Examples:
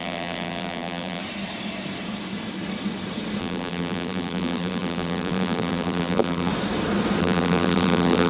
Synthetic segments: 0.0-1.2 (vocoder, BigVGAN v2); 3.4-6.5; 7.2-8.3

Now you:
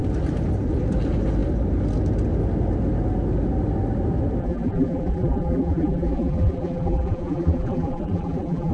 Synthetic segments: 4.4-8.7 (vocoder, BigVGAN v2)

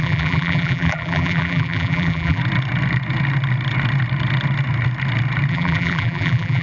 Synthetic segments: 0.0-2.4 (vocoder, BigVGAN v2); 5.5-6.6

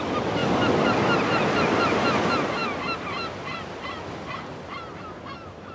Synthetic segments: none

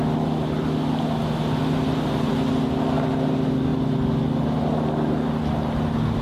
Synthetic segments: none

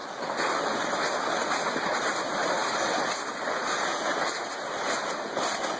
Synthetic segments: none